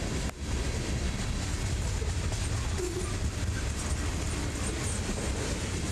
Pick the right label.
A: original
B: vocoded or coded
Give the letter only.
A